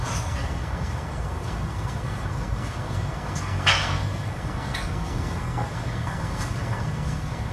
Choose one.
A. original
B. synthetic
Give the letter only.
B